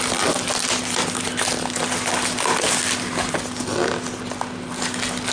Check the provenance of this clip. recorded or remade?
recorded